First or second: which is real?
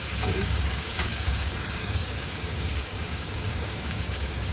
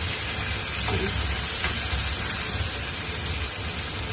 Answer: second